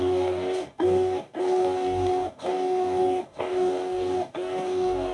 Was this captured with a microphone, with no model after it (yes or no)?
no